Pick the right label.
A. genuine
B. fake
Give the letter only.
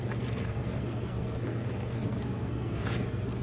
B